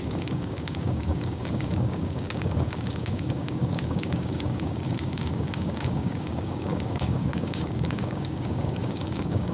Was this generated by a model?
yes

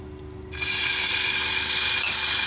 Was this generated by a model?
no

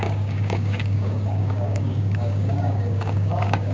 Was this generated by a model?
yes